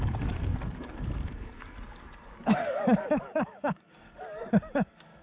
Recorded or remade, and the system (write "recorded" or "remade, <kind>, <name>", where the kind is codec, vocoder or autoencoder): remade, codec, DAC